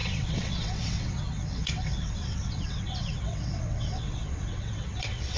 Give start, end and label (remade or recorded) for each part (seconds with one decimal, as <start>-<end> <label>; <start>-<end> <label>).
0.0-5.4 remade